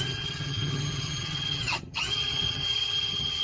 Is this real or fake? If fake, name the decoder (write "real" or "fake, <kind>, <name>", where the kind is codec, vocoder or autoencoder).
fake, vocoder, HiFi-GAN